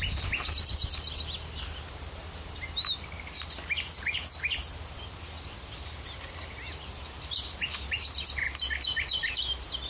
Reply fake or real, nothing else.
real